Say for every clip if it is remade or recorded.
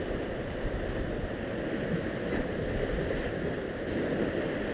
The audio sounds recorded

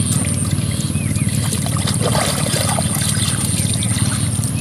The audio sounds recorded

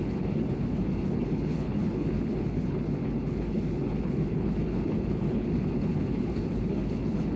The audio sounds remade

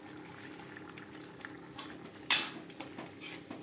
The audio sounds recorded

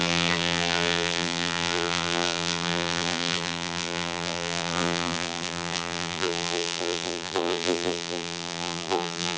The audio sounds remade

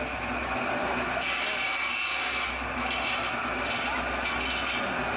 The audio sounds recorded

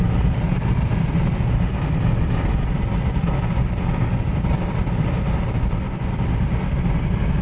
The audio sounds recorded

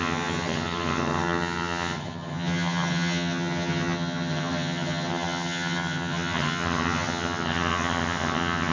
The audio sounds remade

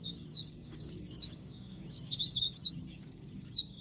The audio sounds remade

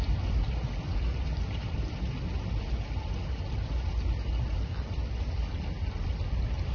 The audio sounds recorded